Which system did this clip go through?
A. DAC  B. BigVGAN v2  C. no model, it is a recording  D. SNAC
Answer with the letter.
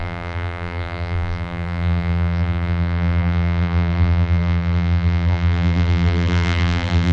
B